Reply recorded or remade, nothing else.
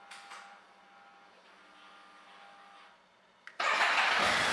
recorded